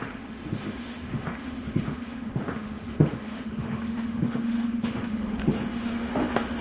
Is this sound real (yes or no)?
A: no